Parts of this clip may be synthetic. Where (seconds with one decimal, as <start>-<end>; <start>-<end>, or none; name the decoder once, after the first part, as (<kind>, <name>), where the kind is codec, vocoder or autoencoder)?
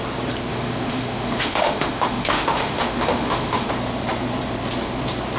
0.5-3.7 (autoencoder, DAC-VAE)